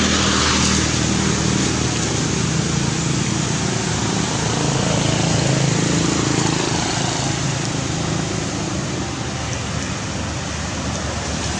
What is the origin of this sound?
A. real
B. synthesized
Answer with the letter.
A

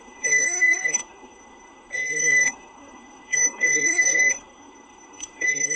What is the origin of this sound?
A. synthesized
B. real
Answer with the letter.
A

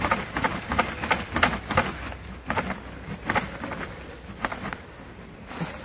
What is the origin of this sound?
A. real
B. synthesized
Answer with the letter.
A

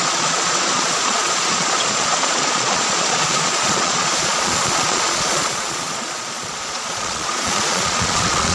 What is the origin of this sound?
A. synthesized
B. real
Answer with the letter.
A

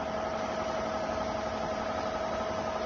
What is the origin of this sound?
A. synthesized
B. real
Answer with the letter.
B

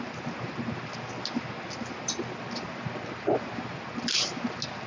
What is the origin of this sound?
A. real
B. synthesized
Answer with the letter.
A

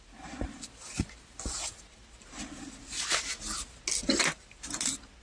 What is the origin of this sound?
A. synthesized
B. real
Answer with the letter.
B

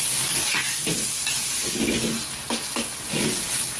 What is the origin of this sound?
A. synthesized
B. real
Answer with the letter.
B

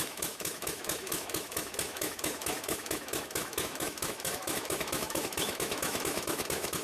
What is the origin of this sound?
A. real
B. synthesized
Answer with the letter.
B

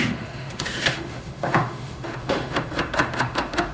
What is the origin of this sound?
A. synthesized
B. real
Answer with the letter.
A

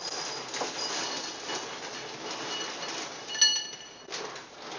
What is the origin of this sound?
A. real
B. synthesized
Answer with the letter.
A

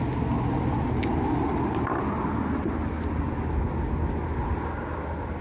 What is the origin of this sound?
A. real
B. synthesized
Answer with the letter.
A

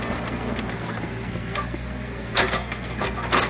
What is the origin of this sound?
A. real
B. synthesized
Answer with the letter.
B